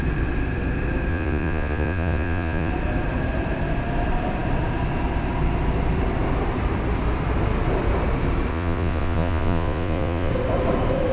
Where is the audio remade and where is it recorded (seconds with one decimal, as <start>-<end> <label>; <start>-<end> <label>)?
0.0-1.1 recorded; 1.1-2.7 remade; 2.7-8.5 recorded; 8.5-10.3 remade; 10.3-11.1 recorded